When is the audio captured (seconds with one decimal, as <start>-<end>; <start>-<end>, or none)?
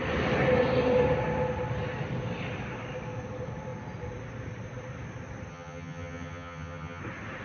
0.0-5.5; 7.0-7.4